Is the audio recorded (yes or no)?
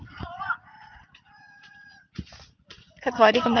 no